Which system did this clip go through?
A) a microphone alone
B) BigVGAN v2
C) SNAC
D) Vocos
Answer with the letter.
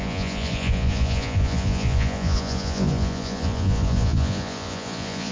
D